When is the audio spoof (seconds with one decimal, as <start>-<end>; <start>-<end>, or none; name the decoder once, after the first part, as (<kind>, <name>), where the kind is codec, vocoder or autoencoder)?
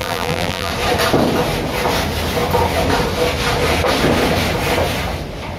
0.0-0.7 (vocoder, BigVGAN v2)